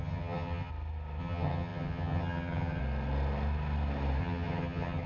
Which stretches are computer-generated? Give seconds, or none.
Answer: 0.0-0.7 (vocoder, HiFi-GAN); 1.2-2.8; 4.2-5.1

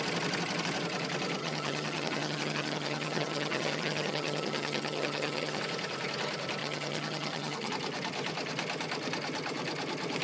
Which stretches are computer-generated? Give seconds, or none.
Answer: 1.4-5.6 (vocoder, HiFi-GAN); 6.6-7.7

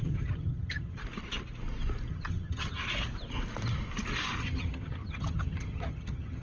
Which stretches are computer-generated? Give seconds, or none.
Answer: 0.0-1.0 (vocoder, HiFi-GAN); 2.1-2.8; 4.4-6.4

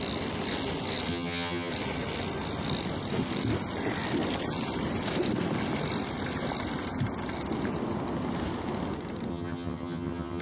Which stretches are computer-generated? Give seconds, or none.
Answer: 1.1-1.7 (vocoder, HiFi-GAN); 9.3-10.4

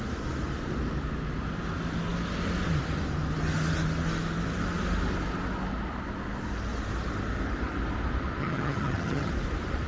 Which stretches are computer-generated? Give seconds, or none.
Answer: 8.4-9.3 (vocoder, HiFi-GAN)

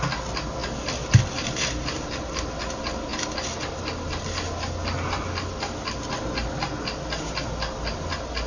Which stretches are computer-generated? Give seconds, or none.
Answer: none